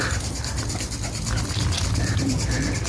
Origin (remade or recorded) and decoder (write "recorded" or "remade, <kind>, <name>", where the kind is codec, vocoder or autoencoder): remade, vocoder, BigVGAN v2